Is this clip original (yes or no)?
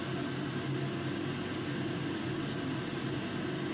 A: yes